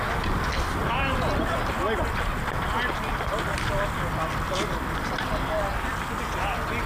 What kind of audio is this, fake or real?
real